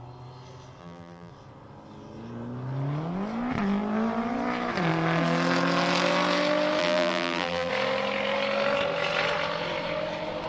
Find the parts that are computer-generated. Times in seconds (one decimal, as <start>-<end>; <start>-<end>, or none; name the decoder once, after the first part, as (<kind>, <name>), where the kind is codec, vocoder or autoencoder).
0.8-1.3 (vocoder, BigVGAN v2); 6.8-7.7